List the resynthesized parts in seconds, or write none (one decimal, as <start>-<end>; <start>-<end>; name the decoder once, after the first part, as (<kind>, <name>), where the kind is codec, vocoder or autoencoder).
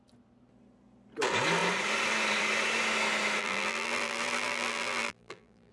3.4-5.7 (vocoder, BigVGAN v2)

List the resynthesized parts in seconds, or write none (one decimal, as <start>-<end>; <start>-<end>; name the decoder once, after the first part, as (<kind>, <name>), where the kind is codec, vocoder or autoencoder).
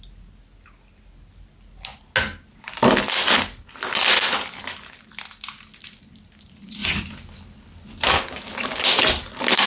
none